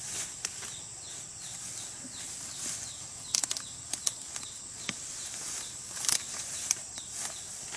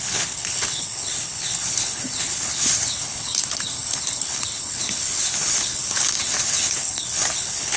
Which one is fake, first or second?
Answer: second